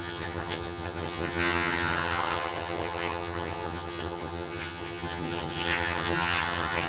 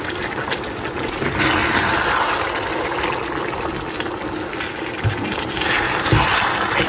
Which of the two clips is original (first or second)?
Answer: second